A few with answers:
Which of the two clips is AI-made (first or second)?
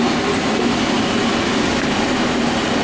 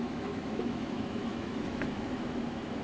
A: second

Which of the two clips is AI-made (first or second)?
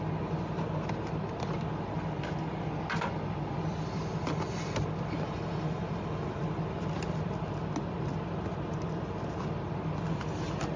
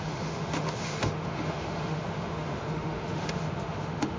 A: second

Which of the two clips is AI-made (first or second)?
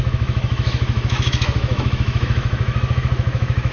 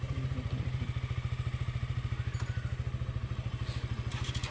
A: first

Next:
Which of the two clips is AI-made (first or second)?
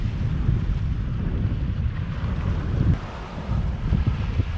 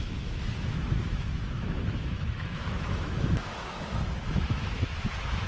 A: second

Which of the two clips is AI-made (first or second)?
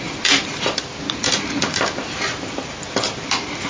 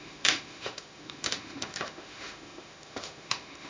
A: second